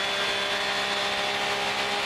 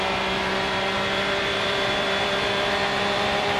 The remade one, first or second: second